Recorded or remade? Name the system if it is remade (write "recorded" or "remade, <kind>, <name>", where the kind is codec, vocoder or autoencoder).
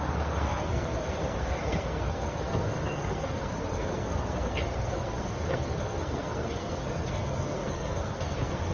remade, codec, SNAC